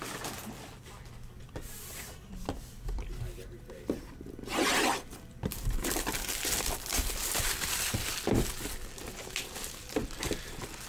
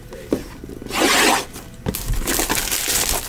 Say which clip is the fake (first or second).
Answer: first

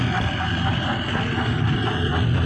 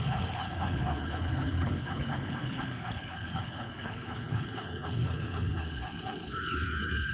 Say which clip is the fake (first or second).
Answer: second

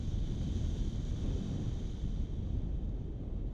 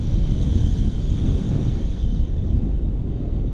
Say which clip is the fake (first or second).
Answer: second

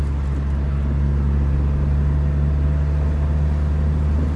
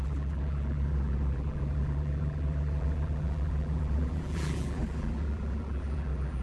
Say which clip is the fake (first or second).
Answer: second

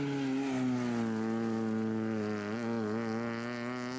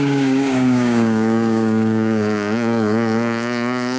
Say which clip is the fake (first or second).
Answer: second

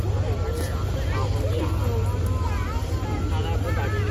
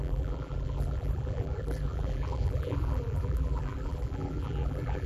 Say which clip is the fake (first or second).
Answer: second